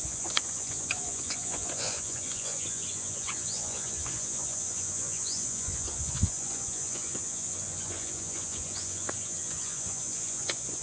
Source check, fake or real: fake